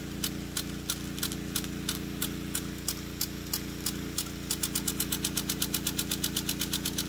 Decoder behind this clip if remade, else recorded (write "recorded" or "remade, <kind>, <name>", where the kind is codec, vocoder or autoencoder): recorded